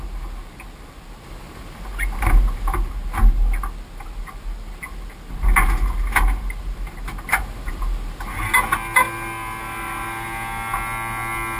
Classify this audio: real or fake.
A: real